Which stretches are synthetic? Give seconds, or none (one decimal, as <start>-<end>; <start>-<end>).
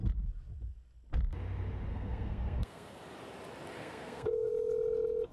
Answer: 1.9-3.0; 3.8-4.5